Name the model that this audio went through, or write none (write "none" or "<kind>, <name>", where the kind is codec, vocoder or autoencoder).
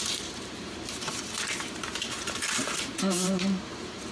vocoder, BigVGAN v2